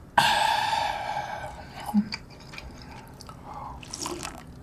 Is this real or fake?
fake